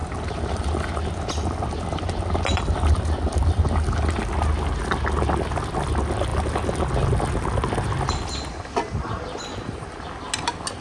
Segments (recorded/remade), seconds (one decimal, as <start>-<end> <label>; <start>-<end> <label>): 0.0-10.8 recorded